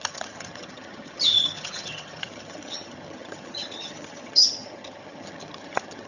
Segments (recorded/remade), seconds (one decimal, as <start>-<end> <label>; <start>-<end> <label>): 0.0-6.1 remade